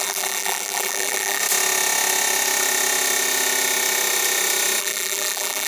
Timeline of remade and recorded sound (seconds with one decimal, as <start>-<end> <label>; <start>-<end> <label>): 0.0-1.4 remade; 1.4-4.8 recorded; 4.8-5.7 remade